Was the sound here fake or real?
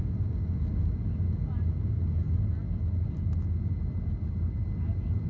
real